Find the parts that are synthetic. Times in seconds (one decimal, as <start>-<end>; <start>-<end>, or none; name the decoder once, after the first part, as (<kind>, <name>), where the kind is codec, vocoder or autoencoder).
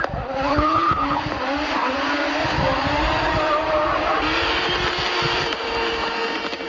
0.5-1.2 (codec, HILCodec)